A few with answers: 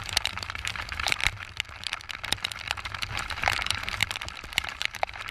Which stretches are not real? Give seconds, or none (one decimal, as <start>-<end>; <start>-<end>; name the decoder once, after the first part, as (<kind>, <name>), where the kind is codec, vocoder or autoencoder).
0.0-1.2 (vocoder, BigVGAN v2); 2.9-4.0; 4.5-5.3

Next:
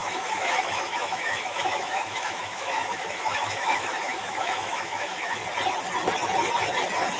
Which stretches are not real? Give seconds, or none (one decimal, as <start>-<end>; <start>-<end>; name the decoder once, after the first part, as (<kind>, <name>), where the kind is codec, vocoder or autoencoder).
0.0-5.4 (autoencoder, DAC-VAE)

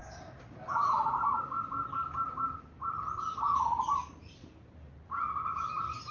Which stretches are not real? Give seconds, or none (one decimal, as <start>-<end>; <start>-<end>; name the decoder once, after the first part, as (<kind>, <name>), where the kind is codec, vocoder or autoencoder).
none

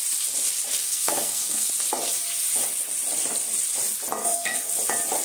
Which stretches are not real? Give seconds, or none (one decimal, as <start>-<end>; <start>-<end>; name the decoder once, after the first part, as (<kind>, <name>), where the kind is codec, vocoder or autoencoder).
0.8-1.7 (codec, SNAC); 4.2-4.7